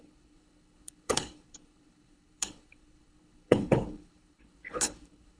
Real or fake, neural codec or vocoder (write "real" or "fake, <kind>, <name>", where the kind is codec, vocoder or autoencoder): fake, codec, HILCodec